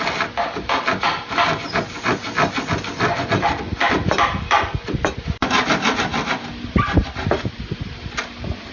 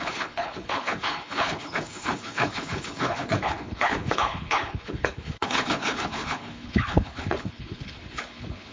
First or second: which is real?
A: first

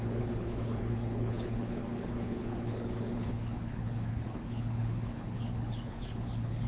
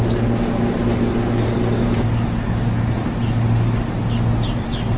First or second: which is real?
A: second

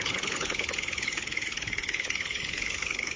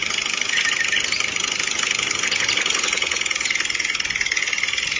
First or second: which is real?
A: second